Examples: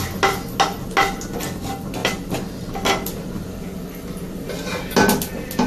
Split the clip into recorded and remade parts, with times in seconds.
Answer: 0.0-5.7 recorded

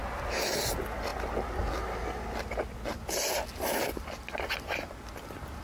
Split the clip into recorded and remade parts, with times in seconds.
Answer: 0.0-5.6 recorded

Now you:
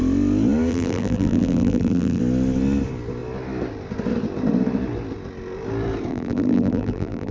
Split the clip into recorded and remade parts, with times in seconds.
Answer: 0.0-0.7 recorded; 0.7-2.2 remade; 2.2-6.1 recorded; 6.1-7.3 remade

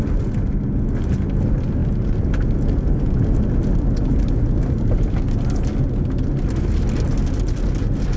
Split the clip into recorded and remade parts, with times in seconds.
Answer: 0.0-8.2 recorded

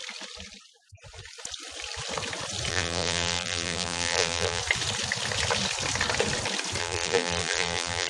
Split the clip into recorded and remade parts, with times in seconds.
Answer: 0.0-2.7 recorded; 2.7-4.6 remade; 4.6-6.8 recorded; 6.8-8.1 remade